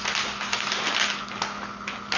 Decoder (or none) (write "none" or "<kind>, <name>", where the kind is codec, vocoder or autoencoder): none